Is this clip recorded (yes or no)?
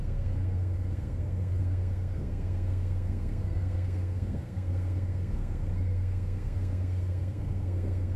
no